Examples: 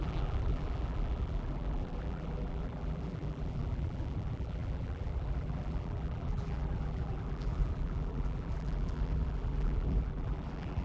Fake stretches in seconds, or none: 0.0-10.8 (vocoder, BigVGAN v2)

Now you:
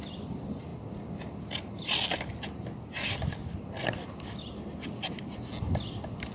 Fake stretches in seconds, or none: none

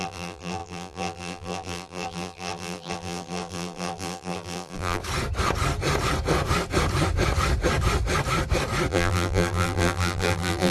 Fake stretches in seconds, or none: 0.0-5.0 (vocoder, BigVGAN v2); 8.9-10.7

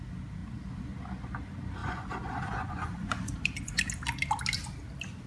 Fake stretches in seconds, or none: 1.8-3.8 (vocoder, Vocos)

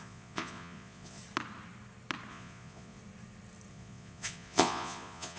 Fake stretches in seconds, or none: 0.0-1.2 (vocoder, Vocos); 2.3-3.0; 3.7-5.4

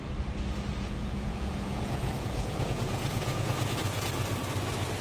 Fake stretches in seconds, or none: 0.7-3.5 (vocoder, Vocos)